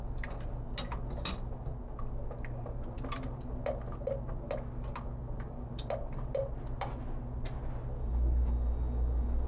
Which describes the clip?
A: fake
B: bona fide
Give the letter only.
B